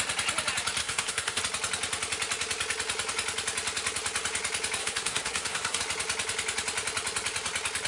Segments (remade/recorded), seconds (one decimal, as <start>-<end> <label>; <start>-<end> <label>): 0.0-0.8 recorded; 0.8-1.4 remade; 1.4-4.8 recorded; 4.8-5.8 remade; 5.8-7.9 recorded